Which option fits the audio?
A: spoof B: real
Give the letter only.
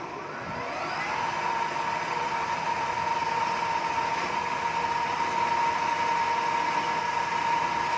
B